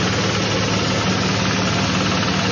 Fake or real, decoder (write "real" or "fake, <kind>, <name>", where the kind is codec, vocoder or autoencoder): real